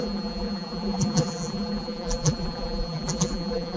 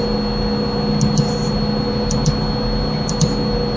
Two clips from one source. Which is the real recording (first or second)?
second